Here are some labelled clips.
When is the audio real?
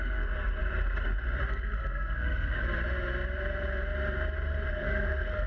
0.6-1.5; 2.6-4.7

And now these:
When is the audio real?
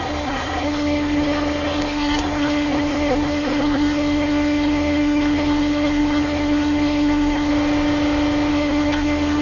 7.5-8.5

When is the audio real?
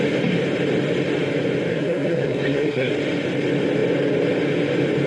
0.0-1.7; 2.9-5.1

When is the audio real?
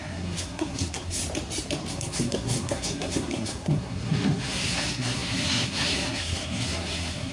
1.2-1.9